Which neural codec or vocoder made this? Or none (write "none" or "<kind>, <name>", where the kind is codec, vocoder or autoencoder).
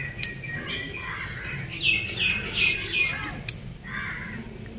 none